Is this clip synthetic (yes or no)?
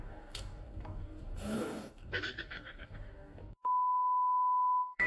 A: yes